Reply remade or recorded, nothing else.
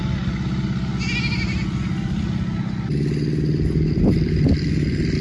recorded